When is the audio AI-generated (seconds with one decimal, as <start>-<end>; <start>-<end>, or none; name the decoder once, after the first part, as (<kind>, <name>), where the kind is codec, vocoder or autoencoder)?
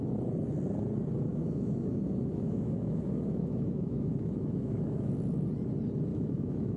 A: 1.3-5.1 (autoencoder, DAC-VAE); 6.1-6.8